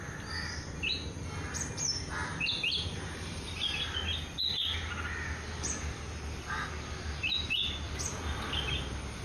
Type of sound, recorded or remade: recorded